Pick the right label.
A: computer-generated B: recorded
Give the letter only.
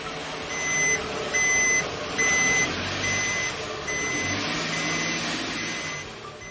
B